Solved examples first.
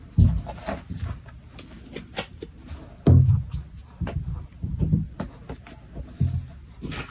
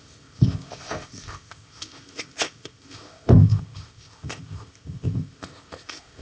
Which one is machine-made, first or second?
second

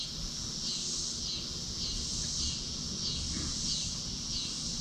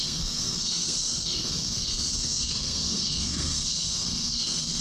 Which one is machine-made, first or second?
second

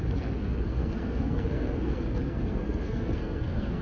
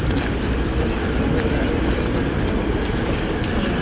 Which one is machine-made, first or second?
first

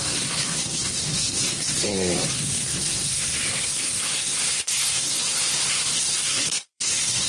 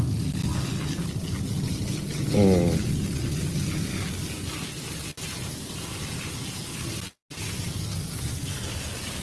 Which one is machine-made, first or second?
first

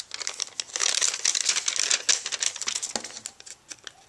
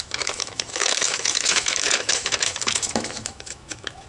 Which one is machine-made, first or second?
second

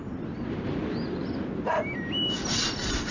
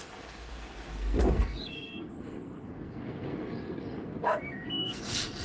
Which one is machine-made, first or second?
second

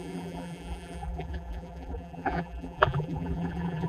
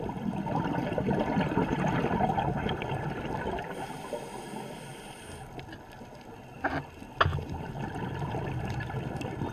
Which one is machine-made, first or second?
first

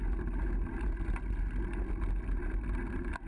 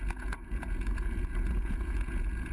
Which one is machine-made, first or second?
second